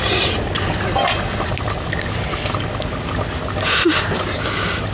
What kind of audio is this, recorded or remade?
recorded